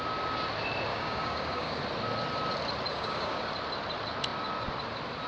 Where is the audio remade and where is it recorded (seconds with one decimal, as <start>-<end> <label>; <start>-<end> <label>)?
0.0-0.9 recorded; 0.9-1.8 remade; 1.8-2.9 recorded; 2.9-3.5 remade; 3.5-5.3 recorded